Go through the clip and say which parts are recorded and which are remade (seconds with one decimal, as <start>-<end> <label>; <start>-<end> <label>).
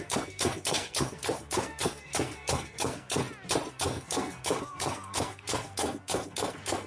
0.0-3.2 remade; 3.2-3.7 recorded; 3.7-6.9 remade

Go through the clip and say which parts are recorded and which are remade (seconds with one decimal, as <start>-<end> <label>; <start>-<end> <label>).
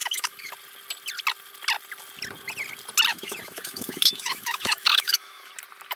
0.0-0.5 remade; 0.5-3.1 recorded; 3.1-5.5 remade; 5.5-6.0 recorded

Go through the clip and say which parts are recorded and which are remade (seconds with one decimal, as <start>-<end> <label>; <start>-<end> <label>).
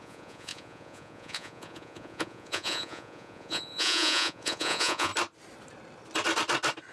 0.0-5.1 remade; 5.1-6.9 recorded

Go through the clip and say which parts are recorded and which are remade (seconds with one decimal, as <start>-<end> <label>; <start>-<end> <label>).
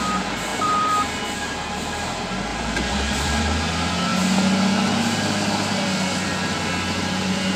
0.0-0.5 recorded; 0.5-1.2 remade; 1.2-2.5 recorded; 2.5-3.4 remade; 3.4-7.6 recorded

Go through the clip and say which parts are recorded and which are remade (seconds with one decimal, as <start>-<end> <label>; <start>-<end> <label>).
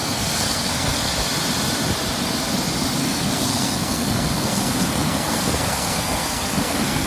0.0-1.1 remade; 1.1-3.0 recorded; 3.0-7.1 remade